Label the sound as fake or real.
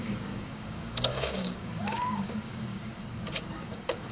fake